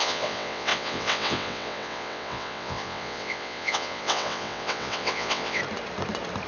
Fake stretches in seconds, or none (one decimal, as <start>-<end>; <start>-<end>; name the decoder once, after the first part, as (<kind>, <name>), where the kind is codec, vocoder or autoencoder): 0.0-5.6 (vocoder, WaveNeXt)